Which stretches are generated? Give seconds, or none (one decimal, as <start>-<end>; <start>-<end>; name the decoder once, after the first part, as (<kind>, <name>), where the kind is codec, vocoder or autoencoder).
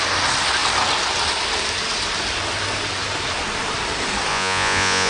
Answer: 4.3-5.1 (vocoder, Vocos)